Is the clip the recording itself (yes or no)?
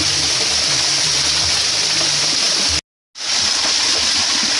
yes